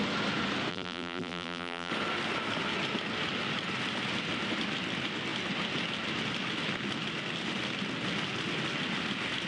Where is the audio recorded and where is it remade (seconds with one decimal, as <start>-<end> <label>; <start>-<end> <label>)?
0.0-0.7 recorded; 0.7-1.9 remade; 1.9-9.5 recorded